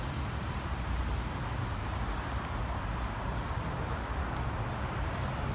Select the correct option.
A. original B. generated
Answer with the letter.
A